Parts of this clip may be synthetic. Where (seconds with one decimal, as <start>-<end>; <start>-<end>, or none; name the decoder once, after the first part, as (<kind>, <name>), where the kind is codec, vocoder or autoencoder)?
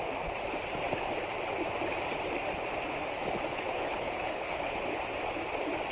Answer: 3.5-4.6 (codec, HILCodec)